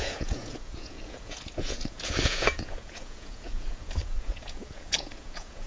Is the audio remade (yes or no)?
yes